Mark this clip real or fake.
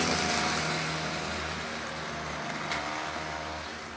real